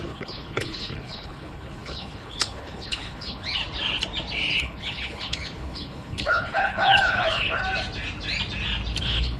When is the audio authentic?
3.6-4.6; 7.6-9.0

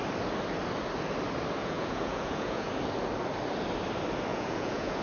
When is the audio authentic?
0.0-1.6; 2.7-4.3

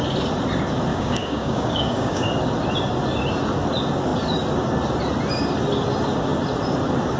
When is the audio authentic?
0.0-0.9; 2.3-7.2